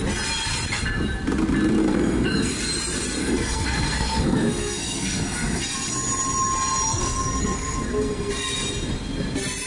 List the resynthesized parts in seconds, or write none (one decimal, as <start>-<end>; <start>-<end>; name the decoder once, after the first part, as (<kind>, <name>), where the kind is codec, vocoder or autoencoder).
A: 1.8-2.6 (codec, SNAC); 3.2-5.9; 6.9-8.3